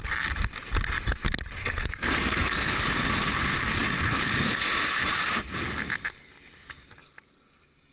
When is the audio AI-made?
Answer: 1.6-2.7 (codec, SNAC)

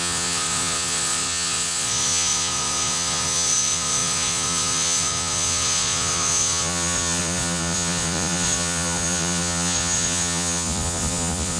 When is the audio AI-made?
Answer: 0.0-11.6 (vocoder, Vocos)